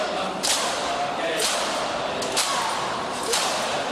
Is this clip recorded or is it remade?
recorded